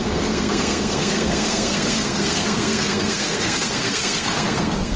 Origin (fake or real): fake